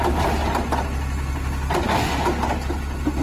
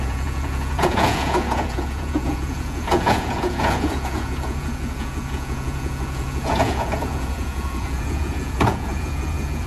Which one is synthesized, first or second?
second